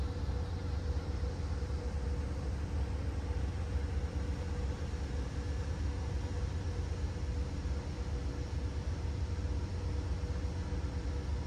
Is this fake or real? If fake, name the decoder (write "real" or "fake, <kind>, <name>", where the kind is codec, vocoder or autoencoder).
real